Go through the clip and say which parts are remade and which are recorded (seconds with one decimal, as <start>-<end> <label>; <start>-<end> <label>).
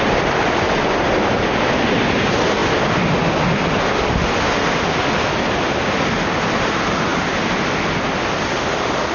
0.0-9.1 recorded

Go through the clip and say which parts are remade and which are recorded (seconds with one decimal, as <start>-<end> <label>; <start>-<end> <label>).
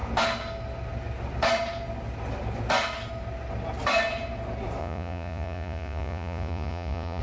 0.0-4.8 recorded; 4.8-7.2 remade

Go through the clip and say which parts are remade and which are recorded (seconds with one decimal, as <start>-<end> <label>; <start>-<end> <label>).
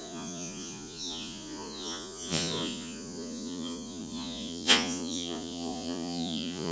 0.0-6.7 remade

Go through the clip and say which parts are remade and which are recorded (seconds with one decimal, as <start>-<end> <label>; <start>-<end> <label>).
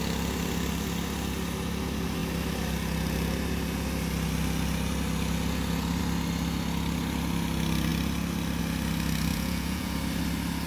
0.0-9.3 recorded; 9.3-9.9 remade; 9.9-10.7 recorded